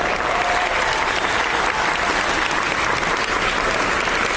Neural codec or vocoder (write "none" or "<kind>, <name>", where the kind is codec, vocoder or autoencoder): none